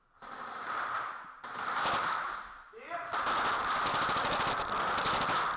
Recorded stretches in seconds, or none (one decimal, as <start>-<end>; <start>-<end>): 0.0-2.0; 2.8-5.6